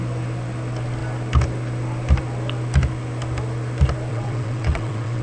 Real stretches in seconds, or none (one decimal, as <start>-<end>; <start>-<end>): 0.0-4.1